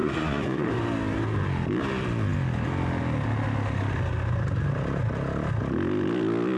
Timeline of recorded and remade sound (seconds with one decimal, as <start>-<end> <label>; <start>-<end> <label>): 0.0-0.7 remade; 0.7-6.6 recorded